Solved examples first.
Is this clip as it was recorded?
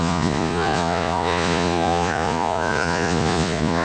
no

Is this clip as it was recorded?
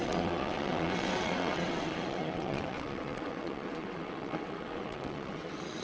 no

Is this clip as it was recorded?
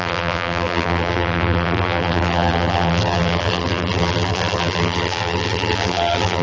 no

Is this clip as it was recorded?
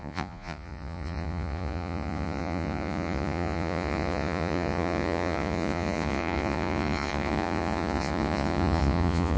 no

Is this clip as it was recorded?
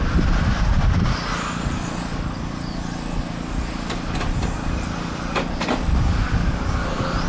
yes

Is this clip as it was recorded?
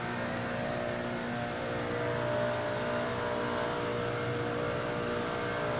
yes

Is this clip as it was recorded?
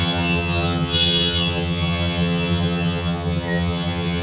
no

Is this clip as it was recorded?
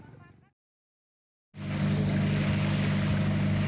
yes